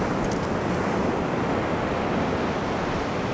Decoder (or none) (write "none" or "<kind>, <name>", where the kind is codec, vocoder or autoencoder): none